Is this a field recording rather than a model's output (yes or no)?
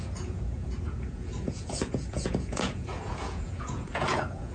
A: no